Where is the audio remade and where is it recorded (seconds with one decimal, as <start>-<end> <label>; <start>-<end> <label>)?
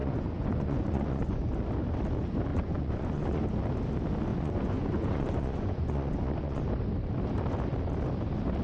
0.0-1.4 remade; 1.4-2.5 recorded; 2.5-3.4 remade; 3.4-4.3 recorded; 4.3-6.6 remade; 6.6-8.6 recorded